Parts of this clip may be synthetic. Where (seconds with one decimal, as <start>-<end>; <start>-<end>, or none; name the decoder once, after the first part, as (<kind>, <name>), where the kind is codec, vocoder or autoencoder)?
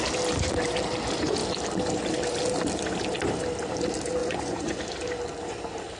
4.2-4.8 (vocoder, Vocos)